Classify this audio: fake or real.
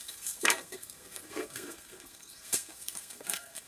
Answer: fake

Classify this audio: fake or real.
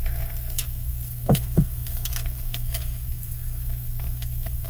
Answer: fake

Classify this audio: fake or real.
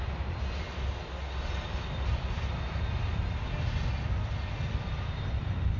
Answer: real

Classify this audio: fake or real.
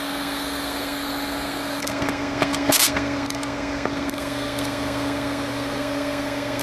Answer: fake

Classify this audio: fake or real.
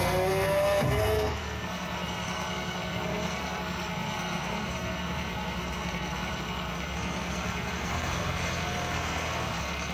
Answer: fake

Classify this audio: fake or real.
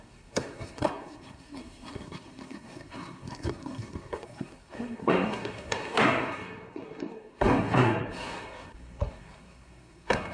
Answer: fake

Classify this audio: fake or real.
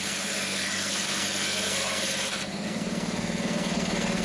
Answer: fake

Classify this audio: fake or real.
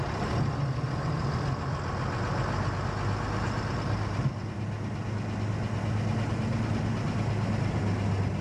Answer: real